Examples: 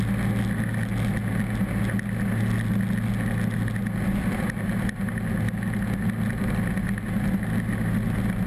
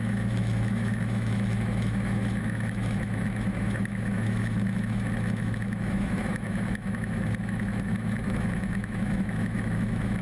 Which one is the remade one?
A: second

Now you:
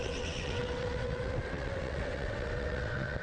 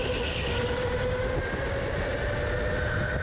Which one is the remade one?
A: first